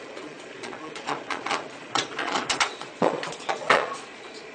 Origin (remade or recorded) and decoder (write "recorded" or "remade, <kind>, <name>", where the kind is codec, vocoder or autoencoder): remade, vocoder, Vocos